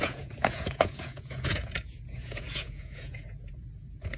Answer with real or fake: fake